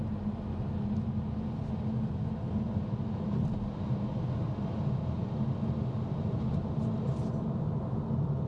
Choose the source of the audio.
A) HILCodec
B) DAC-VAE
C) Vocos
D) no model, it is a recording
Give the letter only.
D